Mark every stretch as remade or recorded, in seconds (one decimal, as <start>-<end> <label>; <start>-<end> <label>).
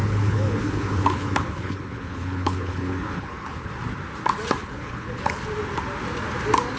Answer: 0.0-3.7 remade; 3.7-4.6 recorded; 4.6-5.4 remade; 5.4-6.8 recorded